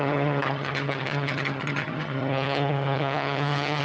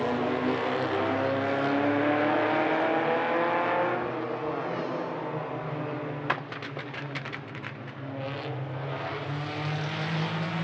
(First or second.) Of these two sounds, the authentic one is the second